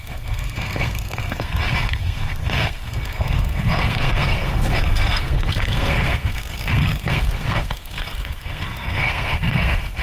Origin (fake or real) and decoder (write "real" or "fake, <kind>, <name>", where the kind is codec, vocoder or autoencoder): fake, codec, SNAC